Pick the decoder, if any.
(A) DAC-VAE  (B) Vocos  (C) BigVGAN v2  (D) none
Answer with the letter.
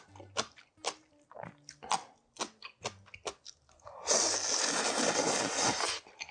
D